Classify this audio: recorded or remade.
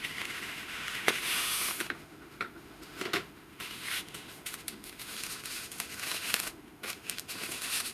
remade